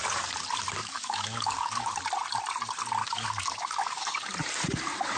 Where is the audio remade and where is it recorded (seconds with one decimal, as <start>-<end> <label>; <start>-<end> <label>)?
0.0-0.8 recorded; 0.8-2.0 remade; 2.0-3.0 recorded; 3.0-4.3 remade; 4.3-5.2 recorded